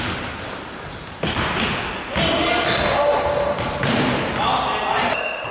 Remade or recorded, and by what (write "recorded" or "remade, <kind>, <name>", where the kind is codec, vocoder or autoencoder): recorded